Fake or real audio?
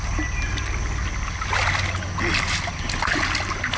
real